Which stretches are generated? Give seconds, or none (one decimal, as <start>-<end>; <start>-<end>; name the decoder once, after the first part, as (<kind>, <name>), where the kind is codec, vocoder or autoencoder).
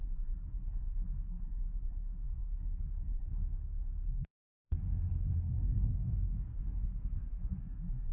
0.0-8.1 (codec, SNAC)